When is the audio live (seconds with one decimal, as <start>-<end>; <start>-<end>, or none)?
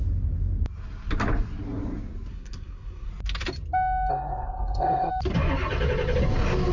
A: 0.0-2.3; 3.1-4.1; 5.1-6.7